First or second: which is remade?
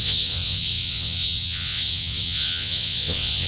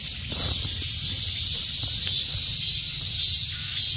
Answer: first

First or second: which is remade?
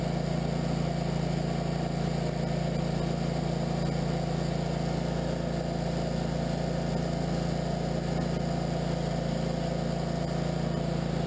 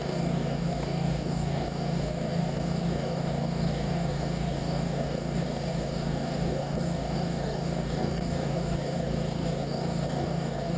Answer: second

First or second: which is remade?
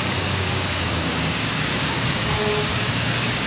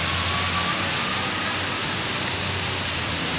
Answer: first